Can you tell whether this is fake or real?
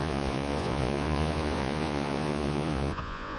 fake